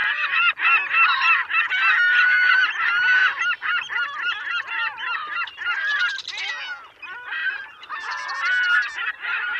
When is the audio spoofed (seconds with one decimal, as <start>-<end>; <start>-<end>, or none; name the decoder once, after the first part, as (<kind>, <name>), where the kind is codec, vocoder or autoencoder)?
1.6-3.2 (vocoder, BigVGAN v2); 7.0-7.4; 9.1-9.6